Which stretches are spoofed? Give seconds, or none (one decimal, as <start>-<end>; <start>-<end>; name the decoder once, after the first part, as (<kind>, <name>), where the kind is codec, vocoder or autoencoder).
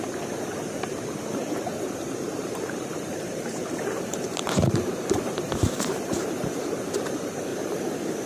0.0-7.5 (vocoder, BigVGAN v2)